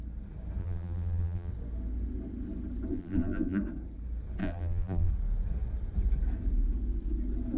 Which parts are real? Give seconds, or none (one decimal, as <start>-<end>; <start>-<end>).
0.0-0.6; 1.5-2.9; 3.6-4.4; 5.1-7.6